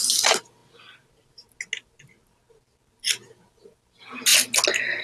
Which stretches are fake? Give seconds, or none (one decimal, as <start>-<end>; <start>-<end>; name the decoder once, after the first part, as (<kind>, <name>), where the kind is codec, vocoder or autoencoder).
none